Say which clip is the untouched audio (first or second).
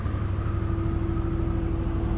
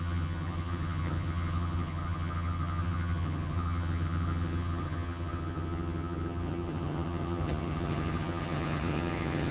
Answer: first